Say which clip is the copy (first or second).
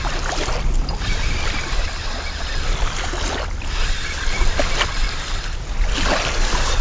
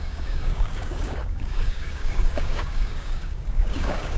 second